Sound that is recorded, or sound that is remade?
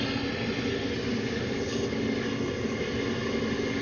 recorded